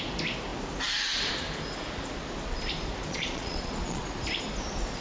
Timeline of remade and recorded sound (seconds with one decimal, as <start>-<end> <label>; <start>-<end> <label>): 0.0-3.1 recorded; 3.1-4.0 remade; 4.0-5.0 recorded